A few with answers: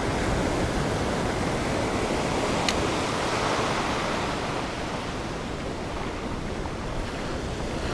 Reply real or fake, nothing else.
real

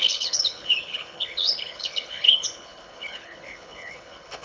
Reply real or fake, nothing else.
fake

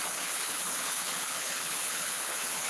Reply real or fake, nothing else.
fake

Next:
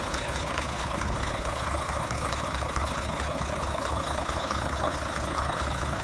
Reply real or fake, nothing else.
fake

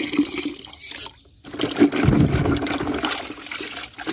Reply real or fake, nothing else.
real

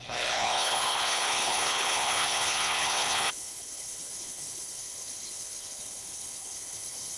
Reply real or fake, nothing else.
fake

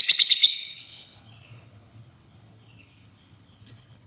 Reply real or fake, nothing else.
fake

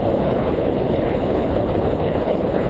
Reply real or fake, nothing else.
fake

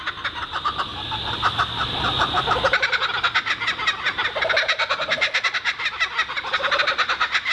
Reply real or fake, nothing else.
real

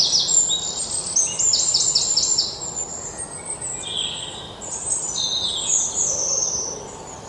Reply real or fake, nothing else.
real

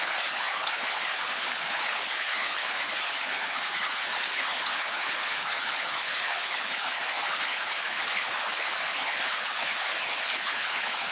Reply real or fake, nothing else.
fake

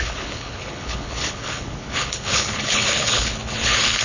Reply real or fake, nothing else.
fake